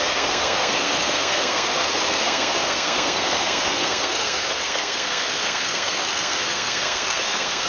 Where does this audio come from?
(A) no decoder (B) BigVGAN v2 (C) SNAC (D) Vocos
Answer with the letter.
C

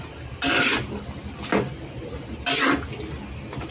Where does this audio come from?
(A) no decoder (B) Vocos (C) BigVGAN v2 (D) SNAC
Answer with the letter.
A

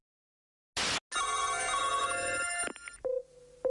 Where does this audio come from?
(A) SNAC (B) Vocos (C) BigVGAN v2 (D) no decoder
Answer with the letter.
D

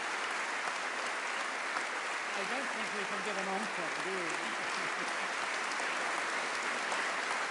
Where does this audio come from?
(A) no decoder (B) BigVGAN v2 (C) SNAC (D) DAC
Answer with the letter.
A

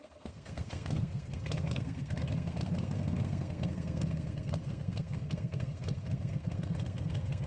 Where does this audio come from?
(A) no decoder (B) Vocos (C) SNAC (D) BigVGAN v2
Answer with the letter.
C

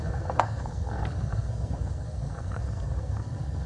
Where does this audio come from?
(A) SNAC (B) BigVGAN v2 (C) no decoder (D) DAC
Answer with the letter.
A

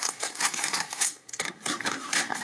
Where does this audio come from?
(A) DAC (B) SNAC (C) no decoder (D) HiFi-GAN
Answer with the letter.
B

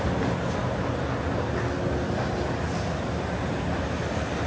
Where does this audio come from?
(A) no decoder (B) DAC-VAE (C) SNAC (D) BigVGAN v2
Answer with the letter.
A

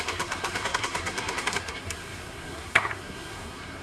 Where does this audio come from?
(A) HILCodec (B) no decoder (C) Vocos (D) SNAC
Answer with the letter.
D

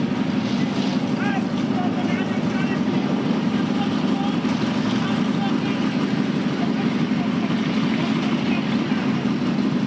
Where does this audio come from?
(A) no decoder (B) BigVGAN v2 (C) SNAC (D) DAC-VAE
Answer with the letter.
A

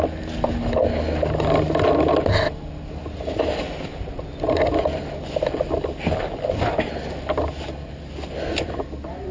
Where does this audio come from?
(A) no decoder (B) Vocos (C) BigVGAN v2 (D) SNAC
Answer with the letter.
A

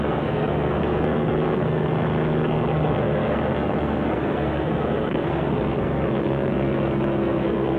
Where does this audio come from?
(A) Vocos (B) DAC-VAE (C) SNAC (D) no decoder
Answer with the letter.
C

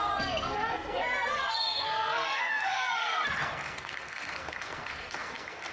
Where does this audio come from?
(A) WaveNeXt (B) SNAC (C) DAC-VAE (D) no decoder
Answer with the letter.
B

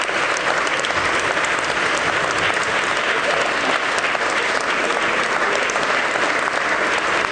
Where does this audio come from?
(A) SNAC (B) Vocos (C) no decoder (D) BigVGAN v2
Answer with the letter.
C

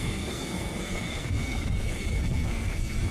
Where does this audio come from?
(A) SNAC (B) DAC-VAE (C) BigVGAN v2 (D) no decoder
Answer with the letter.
A